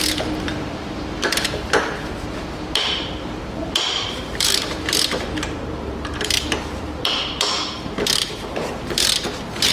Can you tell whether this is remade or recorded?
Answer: remade